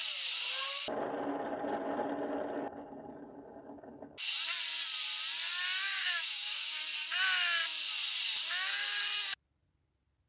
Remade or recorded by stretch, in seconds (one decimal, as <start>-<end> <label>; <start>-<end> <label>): 0.0-5.9 recorded; 5.9-6.8 remade; 6.8-10.3 recorded